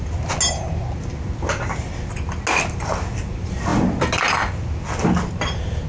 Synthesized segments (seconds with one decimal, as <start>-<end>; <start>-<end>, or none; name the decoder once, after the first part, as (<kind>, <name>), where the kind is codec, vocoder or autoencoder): none